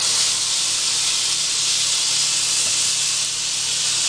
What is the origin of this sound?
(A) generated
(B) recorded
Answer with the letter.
B